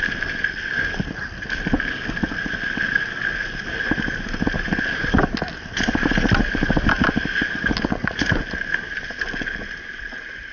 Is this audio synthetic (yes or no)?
no